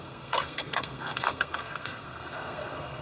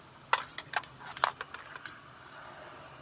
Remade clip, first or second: first